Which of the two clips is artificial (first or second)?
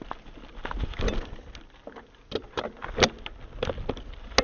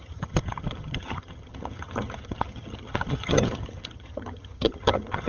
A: second